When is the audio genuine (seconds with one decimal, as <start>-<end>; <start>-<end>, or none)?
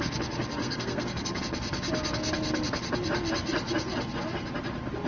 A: 0.0-0.6; 1.4-5.1